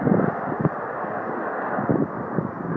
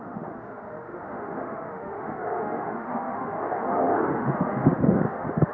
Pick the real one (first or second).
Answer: first